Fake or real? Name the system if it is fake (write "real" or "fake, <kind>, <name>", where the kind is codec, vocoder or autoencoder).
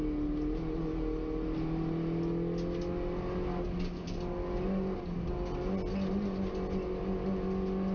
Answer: real